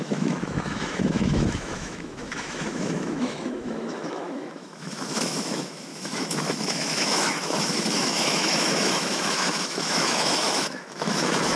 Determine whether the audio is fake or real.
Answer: fake